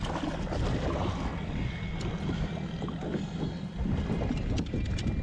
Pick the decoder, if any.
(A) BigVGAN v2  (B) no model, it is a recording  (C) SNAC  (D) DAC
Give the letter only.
B